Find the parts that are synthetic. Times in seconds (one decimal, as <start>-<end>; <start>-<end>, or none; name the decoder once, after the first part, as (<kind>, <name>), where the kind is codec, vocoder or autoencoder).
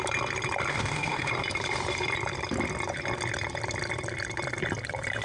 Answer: 0.7-1.3 (autoencoder, DAC-VAE)